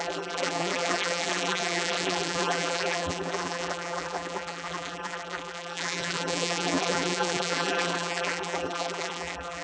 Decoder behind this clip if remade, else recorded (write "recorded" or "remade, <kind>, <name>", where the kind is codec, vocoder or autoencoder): remade, vocoder, BigVGAN v2